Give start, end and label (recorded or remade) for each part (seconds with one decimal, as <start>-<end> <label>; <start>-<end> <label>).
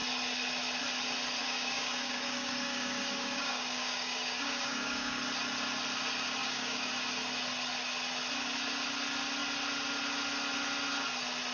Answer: 0.0-1.4 recorded; 1.4-5.2 remade; 5.2-6.4 recorded; 6.4-6.9 remade; 6.9-11.5 recorded